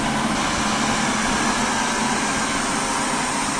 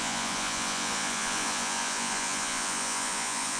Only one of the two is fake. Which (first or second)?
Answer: second